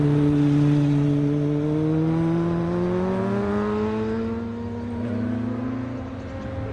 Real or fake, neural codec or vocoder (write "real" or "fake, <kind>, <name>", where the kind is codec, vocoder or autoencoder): real